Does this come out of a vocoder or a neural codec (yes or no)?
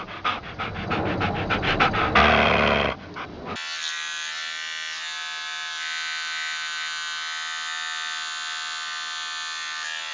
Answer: no